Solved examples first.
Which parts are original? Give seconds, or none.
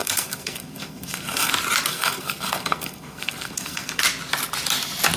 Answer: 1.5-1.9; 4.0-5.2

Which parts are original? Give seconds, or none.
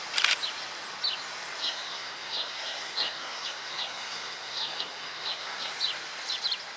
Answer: 0.0-1.6; 5.7-6.8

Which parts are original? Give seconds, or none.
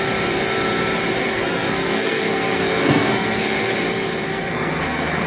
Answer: 0.0-1.2; 3.7-4.3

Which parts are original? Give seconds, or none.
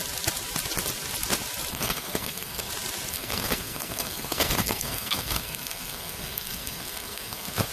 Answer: 0.0-1.7; 2.7-3.1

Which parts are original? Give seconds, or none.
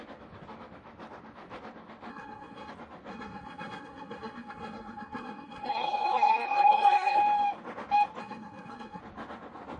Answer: 0.0-2.1; 2.7-3.1; 7.2-8.2; 9.0-9.8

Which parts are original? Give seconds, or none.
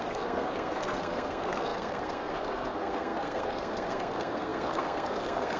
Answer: none